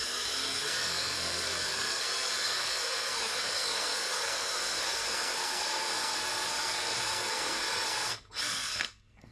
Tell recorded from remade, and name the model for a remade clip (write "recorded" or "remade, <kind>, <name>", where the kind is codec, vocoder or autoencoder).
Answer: remade, codec, SNAC